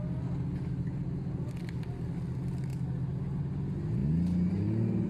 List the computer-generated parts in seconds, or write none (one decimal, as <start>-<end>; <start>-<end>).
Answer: none